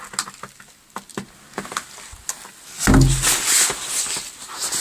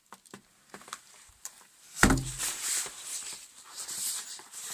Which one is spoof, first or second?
second